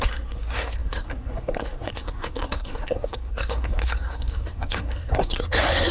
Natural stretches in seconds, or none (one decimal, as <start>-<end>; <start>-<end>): none